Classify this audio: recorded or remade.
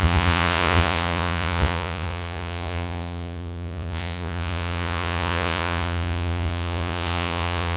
remade